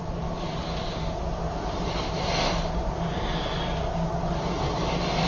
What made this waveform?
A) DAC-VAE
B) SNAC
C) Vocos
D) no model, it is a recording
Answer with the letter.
D